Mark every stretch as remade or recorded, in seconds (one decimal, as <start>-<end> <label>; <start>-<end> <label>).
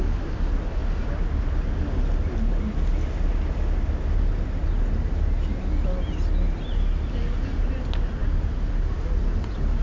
0.0-9.8 recorded